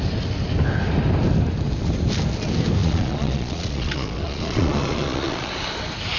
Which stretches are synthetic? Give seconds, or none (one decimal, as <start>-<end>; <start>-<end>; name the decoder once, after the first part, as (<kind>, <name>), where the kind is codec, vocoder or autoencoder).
2.8-5.5 (vocoder, Vocos)